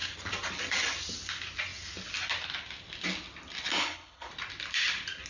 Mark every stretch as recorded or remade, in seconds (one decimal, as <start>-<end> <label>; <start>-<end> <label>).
0.0-3.8 recorded; 3.8-4.3 remade; 4.3-5.3 recorded